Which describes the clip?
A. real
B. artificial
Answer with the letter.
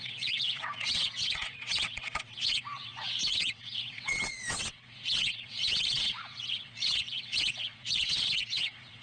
B